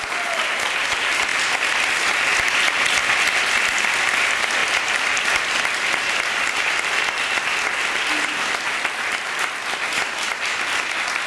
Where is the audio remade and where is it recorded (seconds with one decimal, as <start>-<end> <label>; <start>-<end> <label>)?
0.0-11.3 recorded